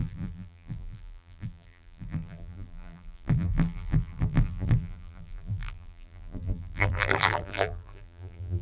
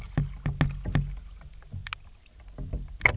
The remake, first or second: first